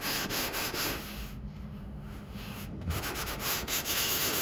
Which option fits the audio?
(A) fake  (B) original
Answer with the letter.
A